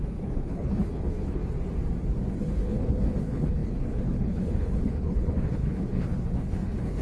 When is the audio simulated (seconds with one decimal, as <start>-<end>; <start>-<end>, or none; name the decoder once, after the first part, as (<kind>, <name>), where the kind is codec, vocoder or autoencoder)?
0.0-1.4 (codec, HILCodec); 2.4-7.0